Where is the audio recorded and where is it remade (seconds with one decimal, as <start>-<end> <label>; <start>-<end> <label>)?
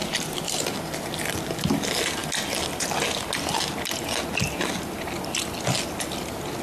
0.0-0.6 remade; 0.6-6.6 recorded